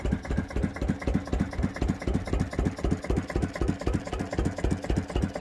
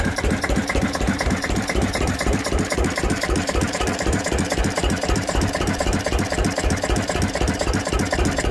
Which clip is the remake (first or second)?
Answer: second